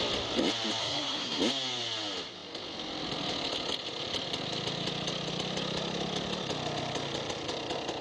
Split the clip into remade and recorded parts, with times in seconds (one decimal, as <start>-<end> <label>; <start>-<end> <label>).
0.0-0.8 recorded; 0.8-1.4 remade; 1.4-8.0 recorded

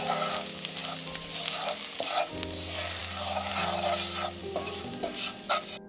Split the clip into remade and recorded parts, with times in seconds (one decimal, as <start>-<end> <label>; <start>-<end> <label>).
0.0-4.4 recorded; 4.4-4.9 remade; 4.9-5.9 recorded